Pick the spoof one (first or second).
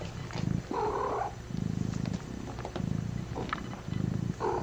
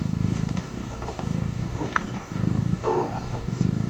second